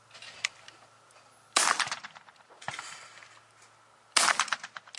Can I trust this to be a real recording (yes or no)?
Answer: yes